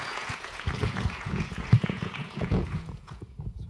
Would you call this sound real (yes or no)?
no